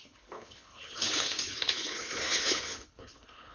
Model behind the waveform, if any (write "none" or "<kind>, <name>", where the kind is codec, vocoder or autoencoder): codec, HILCodec